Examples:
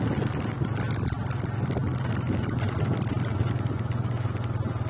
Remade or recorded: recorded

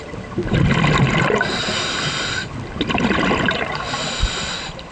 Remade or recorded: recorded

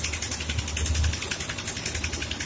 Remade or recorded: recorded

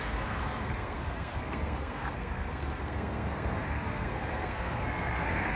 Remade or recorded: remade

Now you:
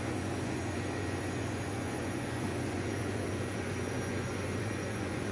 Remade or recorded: remade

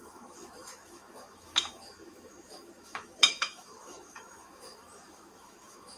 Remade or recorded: remade